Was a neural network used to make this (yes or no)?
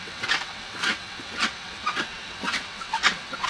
yes